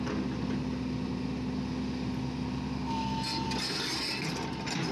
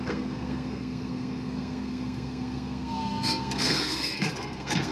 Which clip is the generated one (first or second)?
second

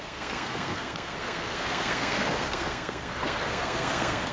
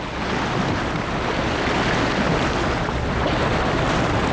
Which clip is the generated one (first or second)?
first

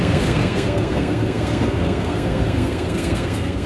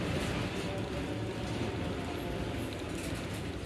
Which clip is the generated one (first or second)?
first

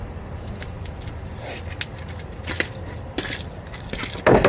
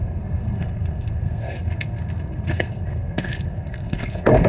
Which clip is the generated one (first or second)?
second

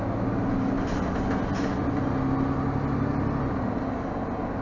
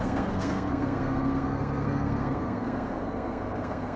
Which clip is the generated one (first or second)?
second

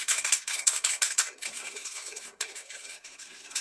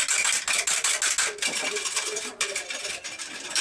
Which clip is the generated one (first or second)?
first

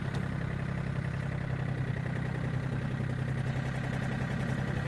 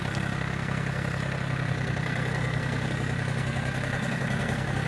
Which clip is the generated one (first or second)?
second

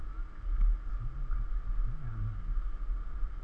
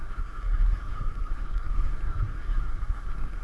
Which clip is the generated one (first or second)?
second